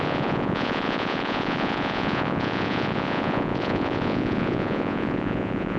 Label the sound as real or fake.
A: fake